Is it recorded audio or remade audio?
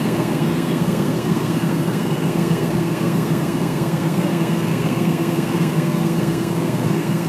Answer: remade